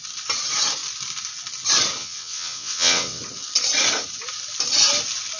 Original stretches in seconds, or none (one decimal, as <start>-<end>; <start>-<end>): 0.0-2.0; 3.2-5.4